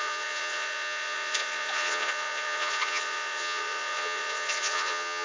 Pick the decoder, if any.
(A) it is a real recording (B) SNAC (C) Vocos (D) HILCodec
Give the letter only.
C